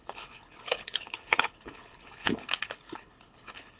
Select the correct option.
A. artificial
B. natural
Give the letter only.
A